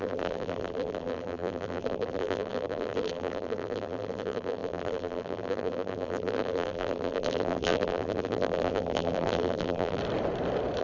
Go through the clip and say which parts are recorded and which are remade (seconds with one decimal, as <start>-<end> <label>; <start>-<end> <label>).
0.0-10.0 remade; 10.0-10.8 recorded

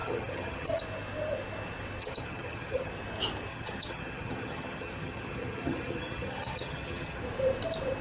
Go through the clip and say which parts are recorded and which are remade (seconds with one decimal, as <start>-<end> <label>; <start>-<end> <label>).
0.0-0.8 remade; 0.8-2.0 recorded; 2.0-2.9 remade; 2.9-3.5 recorded; 3.5-7.2 remade; 7.2-8.0 recorded